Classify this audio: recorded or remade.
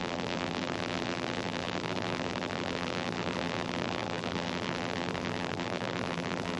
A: remade